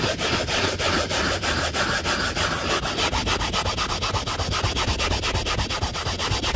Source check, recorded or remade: recorded